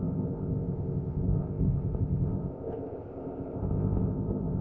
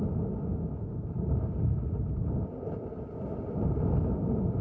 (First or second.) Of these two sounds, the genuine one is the second